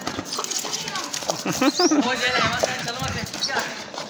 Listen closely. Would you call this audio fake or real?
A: real